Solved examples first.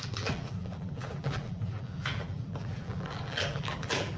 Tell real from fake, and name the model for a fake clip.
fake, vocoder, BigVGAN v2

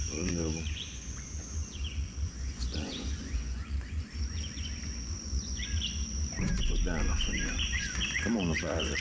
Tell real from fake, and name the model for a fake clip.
fake, vocoder, Vocos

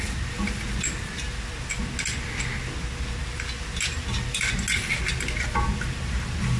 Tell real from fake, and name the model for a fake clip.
real